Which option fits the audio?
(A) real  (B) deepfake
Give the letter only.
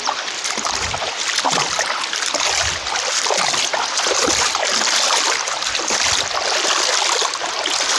A